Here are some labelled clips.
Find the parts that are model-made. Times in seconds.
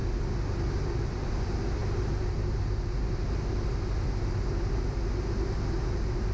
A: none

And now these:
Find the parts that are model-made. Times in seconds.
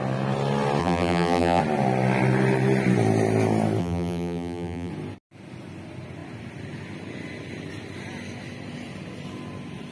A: 0.8-1.6 (vocoder, BigVGAN v2); 3.8-4.9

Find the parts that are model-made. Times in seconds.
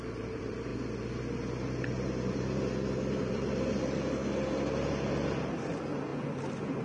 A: 0.0-0.7 (vocoder, BigVGAN v2); 3.2-4.2; 5.4-6.1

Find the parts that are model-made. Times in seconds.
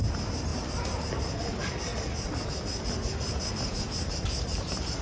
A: 0.0-0.5 (vocoder, BigVGAN v2); 3.5-5.0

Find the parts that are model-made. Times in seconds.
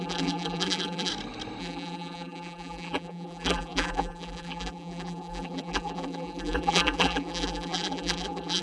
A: 0.0-1.1 (vocoder, BigVGAN v2); 1.6-8.6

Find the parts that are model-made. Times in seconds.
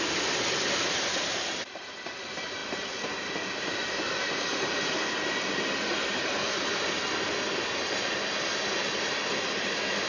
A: none